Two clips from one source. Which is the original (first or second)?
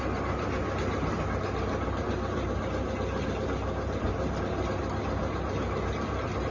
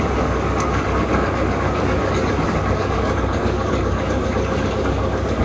first